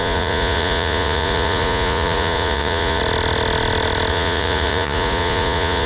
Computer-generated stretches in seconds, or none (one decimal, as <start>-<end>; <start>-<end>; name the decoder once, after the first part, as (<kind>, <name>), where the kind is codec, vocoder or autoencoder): 0.0-3.0 (vocoder, Vocos); 4.1-5.9